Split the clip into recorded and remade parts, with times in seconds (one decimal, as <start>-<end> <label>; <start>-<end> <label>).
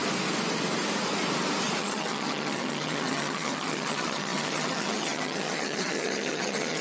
0.0-1.8 recorded; 1.8-6.8 remade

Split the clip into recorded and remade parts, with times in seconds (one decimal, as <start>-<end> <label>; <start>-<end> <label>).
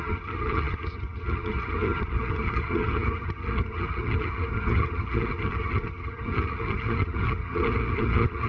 0.0-8.5 remade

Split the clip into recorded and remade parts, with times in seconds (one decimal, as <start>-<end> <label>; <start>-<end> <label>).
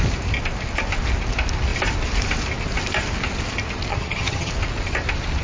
0.0-3.9 recorded; 3.9-4.5 remade; 4.5-5.4 recorded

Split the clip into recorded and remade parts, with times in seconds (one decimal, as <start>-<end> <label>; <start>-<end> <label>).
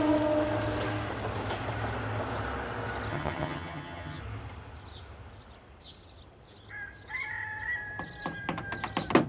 0.0-3.1 recorded; 3.1-4.2 remade; 4.2-9.3 recorded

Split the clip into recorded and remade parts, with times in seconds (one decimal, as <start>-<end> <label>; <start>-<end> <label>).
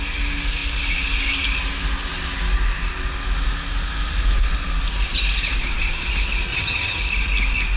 0.0-6.5 recorded; 6.5-7.0 remade; 7.0-7.8 recorded